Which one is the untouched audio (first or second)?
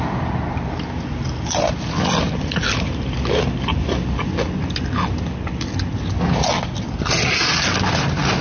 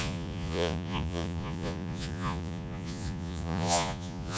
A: first